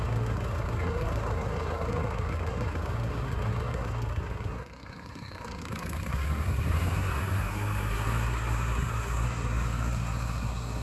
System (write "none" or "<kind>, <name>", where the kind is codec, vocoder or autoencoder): codec, SNAC